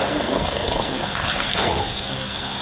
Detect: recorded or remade remade